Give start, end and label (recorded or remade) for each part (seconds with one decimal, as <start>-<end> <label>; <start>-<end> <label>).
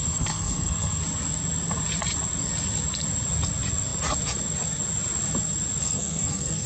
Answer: 0.0-1.0 remade; 1.0-5.8 recorded; 5.8-6.7 remade